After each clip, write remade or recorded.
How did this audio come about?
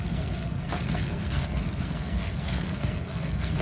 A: remade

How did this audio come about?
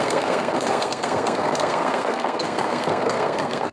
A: remade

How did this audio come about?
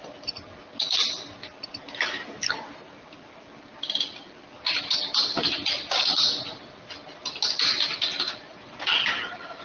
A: recorded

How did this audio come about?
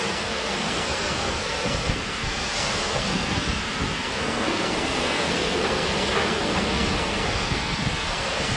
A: remade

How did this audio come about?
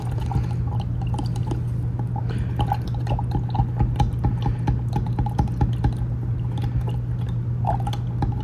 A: recorded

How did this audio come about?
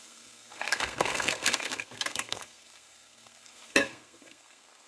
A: remade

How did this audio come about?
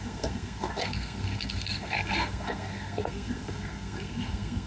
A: remade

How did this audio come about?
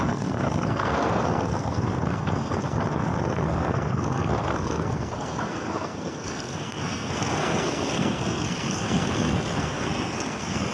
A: remade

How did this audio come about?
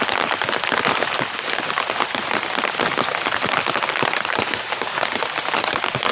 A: recorded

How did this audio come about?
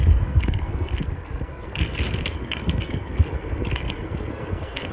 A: remade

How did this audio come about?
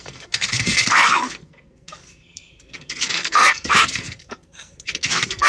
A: remade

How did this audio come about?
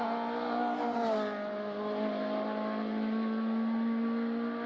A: recorded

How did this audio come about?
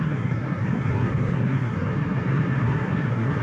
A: remade